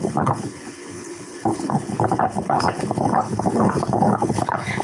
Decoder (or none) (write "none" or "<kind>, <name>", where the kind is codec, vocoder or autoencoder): codec, HILCodec